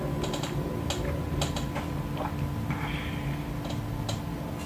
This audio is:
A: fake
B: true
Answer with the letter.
B